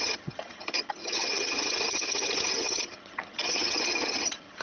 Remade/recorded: remade